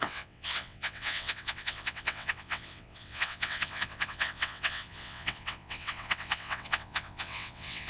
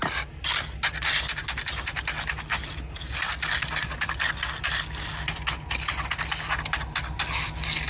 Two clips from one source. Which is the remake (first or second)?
first